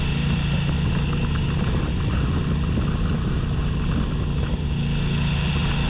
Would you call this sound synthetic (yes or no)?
no